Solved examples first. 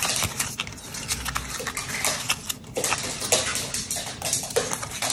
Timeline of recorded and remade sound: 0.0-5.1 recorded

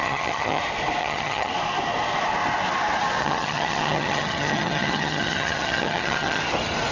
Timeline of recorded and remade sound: 0.0-0.6 remade; 0.6-1.0 recorded; 1.0-1.5 remade; 1.5-3.2 recorded; 3.2-6.4 remade; 6.4-6.9 recorded

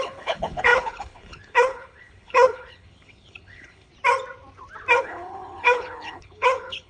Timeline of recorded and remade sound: 0.0-3.9 remade; 3.9-5.0 recorded; 5.0-6.9 remade

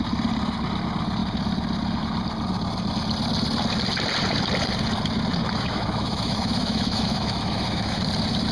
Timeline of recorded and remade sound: 0.0-5.4 recorded; 5.4-8.0 remade; 8.0-8.5 recorded

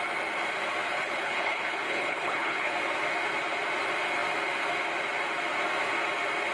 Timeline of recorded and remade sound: 0.0-0.9 recorded; 0.9-2.7 remade; 2.7-6.5 recorded

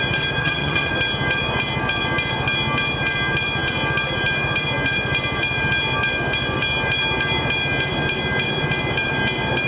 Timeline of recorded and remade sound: 0.0-0.4 recorded; 0.4-0.9 remade; 0.9-9.7 recorded

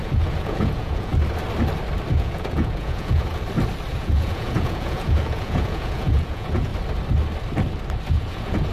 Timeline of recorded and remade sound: 0.0-1.1 remade; 1.1-2.1 recorded; 2.1-3.3 remade; 3.3-3.9 recorded; 3.9-6.7 remade; 6.7-8.1 recorded; 8.1-8.7 remade

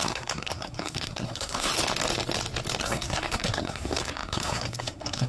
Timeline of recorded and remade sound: 0.0-1.7 remade; 1.7-2.8 recorded; 2.8-5.3 remade